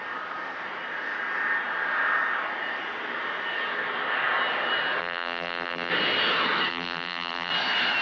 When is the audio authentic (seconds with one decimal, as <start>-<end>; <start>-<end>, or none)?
0.0-5.0; 5.9-6.7; 7.5-8.0